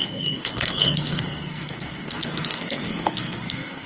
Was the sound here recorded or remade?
remade